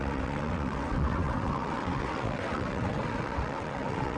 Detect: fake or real fake